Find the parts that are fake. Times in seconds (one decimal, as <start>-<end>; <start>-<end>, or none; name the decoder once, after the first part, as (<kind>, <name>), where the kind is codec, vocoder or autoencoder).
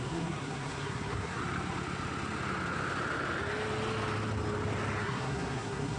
0.0-1.4 (codec, SNAC); 5.0-6.0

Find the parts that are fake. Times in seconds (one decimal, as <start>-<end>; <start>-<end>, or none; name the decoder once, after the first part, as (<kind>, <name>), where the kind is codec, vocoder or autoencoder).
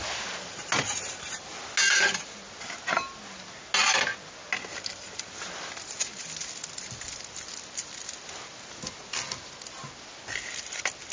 1.8-2.4 (vocoder, BigVGAN v2)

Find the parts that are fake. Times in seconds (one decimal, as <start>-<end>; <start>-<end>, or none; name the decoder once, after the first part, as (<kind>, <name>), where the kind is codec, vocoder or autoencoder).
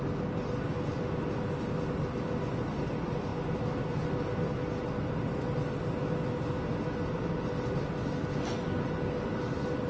none